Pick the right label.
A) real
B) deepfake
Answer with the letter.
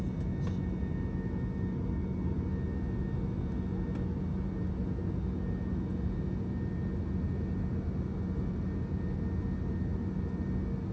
A